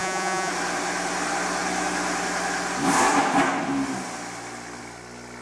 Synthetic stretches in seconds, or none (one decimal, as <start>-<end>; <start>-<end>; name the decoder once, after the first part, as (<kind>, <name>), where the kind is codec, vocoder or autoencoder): 0.0-0.5 (vocoder, Vocos)